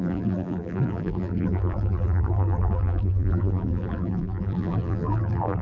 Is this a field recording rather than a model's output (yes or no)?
no